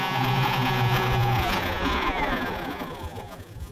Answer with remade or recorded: remade